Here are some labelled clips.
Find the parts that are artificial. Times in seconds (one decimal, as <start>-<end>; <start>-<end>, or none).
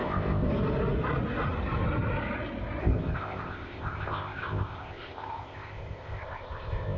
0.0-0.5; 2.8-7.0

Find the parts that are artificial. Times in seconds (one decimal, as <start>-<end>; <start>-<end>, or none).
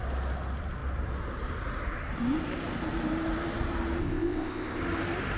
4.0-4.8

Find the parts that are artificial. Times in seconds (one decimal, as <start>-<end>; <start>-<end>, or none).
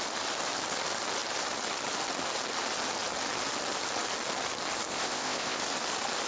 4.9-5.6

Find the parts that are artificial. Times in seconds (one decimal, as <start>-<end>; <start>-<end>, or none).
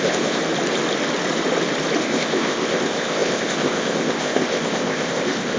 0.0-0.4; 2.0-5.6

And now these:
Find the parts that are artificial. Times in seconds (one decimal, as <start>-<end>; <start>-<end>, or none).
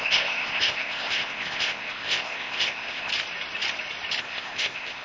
0.0-3.1; 4.2-5.0